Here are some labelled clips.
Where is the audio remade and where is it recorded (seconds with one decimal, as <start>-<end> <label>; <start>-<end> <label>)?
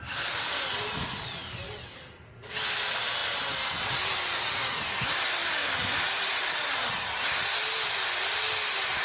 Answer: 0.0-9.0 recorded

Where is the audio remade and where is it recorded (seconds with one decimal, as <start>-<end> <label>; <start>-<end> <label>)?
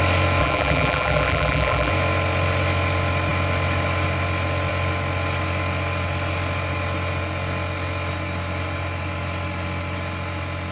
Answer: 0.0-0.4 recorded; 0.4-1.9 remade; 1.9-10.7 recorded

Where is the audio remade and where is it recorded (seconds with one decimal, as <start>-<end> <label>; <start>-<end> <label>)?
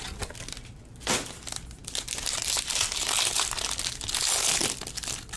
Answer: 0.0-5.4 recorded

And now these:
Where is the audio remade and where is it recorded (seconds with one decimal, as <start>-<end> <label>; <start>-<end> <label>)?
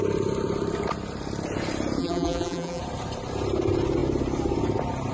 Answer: 0.0-2.0 recorded; 2.0-2.8 remade; 2.8-5.1 recorded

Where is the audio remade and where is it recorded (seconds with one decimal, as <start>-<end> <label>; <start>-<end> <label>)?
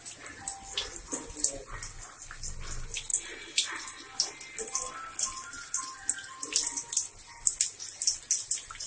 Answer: 0.0-8.9 recorded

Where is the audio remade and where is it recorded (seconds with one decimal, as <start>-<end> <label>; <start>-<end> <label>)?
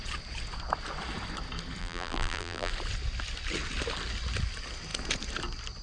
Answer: 0.0-1.8 recorded; 1.8-2.7 remade; 2.7-5.8 recorded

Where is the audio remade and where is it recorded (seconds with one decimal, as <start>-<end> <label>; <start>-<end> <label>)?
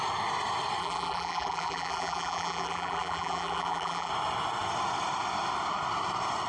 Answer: 0.0-0.8 recorded; 0.8-4.1 remade; 4.1-6.5 recorded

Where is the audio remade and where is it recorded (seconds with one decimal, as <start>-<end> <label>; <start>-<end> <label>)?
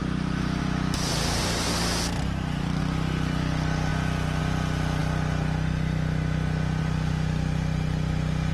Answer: 0.0-0.6 remade; 0.6-1.4 recorded; 1.4-2.8 remade; 2.8-8.5 recorded